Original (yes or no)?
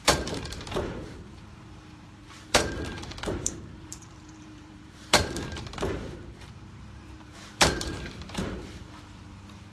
no